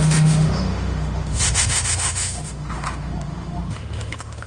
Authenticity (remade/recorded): remade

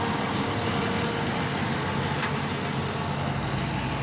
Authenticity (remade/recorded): recorded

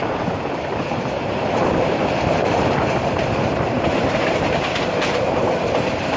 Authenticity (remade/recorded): remade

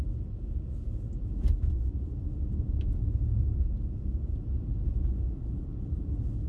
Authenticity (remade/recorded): recorded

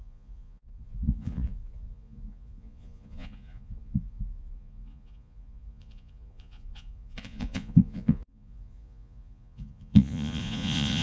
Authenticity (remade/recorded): remade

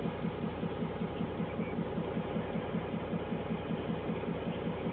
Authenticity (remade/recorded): recorded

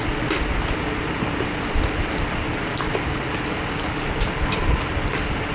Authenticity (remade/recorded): recorded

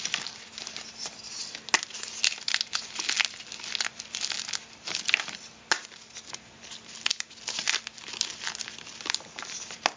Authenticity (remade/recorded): recorded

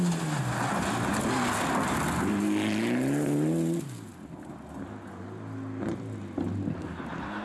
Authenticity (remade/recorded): recorded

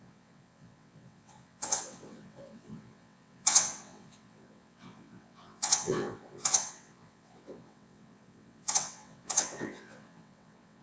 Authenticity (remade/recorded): remade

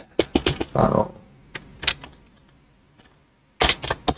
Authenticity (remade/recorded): recorded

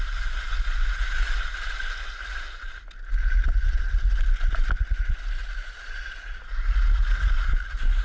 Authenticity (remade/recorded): recorded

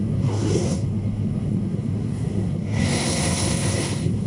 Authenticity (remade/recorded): remade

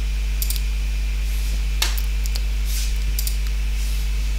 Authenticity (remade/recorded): recorded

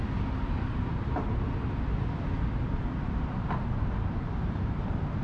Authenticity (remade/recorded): recorded